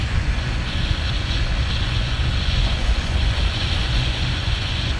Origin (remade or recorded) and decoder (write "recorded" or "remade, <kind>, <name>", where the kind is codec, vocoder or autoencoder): remade, vocoder, Vocos